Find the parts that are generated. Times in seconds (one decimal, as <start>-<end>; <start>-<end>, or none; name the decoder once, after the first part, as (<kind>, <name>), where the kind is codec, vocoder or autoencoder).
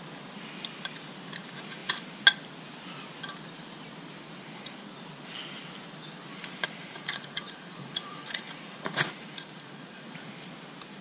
6.8-10.3 (vocoder, Vocos)